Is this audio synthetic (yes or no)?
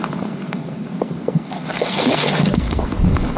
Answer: yes